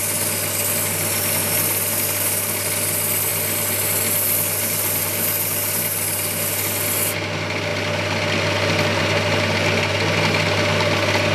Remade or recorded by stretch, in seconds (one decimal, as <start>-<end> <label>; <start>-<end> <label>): 0.0-11.3 recorded